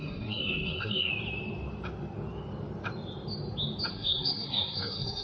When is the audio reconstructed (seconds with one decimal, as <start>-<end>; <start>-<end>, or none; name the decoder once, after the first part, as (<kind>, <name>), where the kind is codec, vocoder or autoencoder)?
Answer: 0.0-1.1 (codec, SNAC); 3.9-5.2